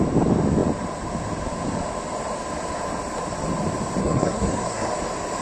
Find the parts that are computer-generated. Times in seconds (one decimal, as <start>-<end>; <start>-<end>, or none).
4.0-4.9